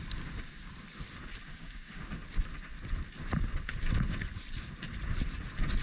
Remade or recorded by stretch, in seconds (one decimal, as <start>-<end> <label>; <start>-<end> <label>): 0.0-1.5 recorded; 1.5-2.1 remade; 2.1-5.8 recorded